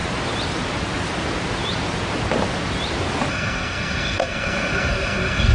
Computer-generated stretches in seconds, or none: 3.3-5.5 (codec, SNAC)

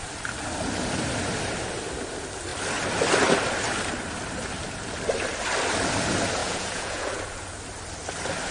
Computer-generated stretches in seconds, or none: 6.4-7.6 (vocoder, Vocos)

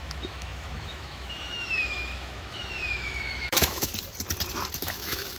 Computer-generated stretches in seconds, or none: 0.0-3.9 (autoencoder, DAC-VAE); 4.8-5.4